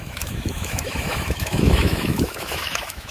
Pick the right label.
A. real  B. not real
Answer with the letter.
B